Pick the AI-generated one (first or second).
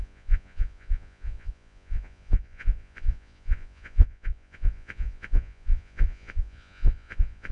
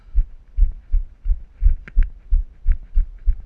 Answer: first